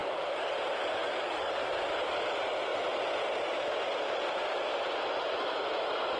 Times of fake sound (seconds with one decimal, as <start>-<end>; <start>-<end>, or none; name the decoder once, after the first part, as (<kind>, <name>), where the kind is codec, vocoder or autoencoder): 0.0-0.6 (codec, DAC); 1.0-1.7